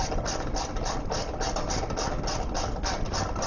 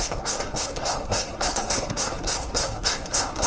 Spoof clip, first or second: second